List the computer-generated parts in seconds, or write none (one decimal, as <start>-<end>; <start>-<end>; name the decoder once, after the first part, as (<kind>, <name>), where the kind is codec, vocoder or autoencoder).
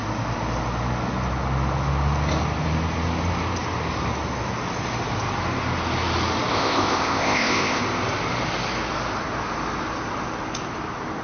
6.5-7.8 (codec, ZipCodec)